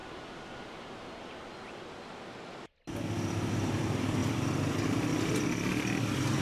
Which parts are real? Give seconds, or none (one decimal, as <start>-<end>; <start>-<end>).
0.0-3.5; 4.2-6.4